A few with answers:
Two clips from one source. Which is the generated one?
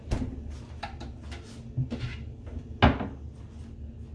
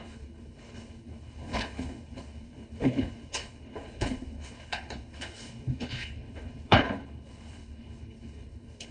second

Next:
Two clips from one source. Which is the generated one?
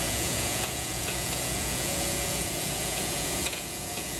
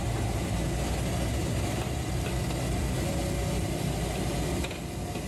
first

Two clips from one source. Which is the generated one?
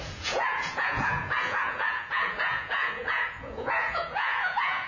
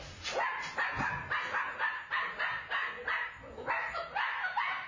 first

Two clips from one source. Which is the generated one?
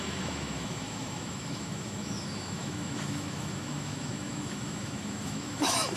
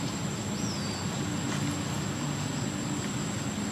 first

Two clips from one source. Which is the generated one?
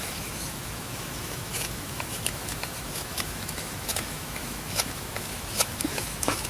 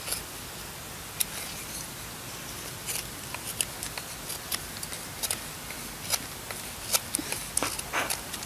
first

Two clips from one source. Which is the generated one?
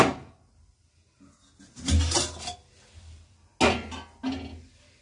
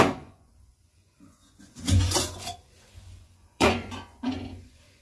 second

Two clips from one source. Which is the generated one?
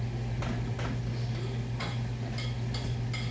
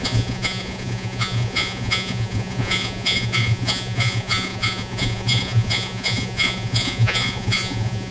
second